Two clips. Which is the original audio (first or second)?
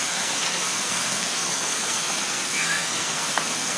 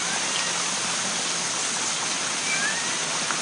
second